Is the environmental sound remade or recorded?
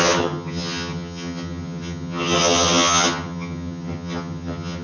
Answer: remade